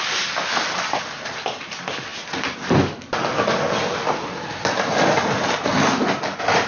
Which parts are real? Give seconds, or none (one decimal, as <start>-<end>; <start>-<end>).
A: 0.0-6.7